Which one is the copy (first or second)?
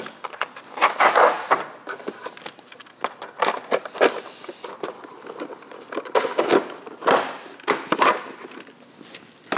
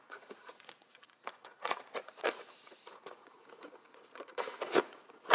second